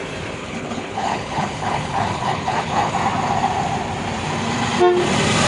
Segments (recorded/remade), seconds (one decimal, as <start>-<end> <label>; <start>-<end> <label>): 0.0-0.4 recorded; 0.4-2.9 remade; 2.9-5.5 recorded